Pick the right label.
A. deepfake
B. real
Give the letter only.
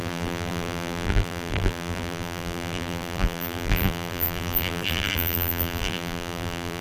A